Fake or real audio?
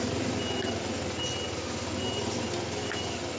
real